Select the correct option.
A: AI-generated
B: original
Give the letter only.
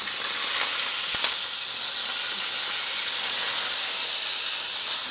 B